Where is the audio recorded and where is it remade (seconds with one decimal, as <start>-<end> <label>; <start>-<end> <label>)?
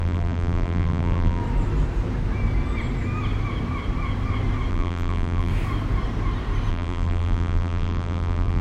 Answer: 0.0-1.4 remade; 1.4-4.7 recorded; 4.7-5.5 remade; 5.5-6.7 recorded; 6.7-8.6 remade